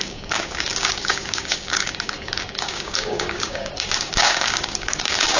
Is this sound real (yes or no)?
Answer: no